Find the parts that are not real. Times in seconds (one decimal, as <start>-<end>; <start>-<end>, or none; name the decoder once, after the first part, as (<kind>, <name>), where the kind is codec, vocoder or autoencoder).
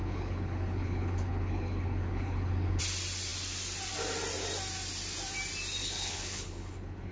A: 0.0-2.8 (codec, HILCodec); 5.8-7.1